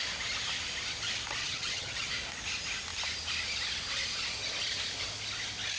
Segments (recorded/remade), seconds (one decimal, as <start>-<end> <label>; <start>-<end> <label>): 0.0-1.4 recorded; 1.4-2.1 remade; 2.1-5.8 recorded